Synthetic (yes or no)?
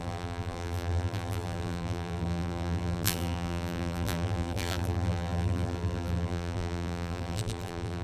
yes